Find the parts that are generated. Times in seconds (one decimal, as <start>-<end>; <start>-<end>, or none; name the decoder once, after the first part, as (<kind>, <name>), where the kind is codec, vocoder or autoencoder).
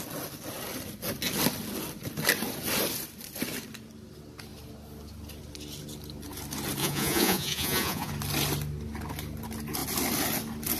6.8-8.1 (vocoder, Vocos)